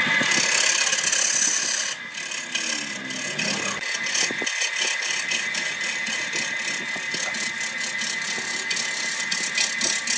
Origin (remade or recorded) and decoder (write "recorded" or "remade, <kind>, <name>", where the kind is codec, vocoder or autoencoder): recorded